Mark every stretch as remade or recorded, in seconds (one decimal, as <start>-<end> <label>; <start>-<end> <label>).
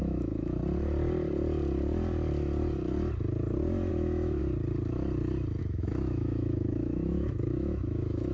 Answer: 0.0-0.6 remade; 0.6-3.9 recorded; 3.9-4.4 remade; 4.4-5.6 recorded; 5.6-8.3 remade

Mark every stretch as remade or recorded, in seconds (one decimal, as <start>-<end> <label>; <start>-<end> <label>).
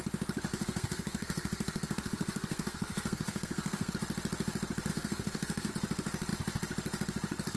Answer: 0.0-0.5 recorded; 0.5-3.9 remade; 3.9-4.9 recorded; 4.9-5.7 remade; 5.7-7.6 recorded